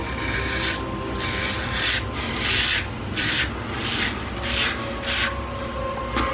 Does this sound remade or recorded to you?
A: recorded